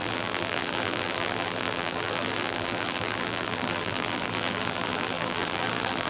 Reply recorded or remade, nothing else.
remade